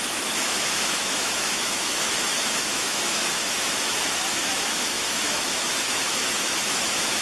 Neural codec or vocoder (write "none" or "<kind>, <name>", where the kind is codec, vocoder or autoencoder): autoencoder, DAC-VAE